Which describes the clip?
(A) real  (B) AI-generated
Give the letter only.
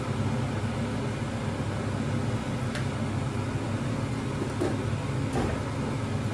A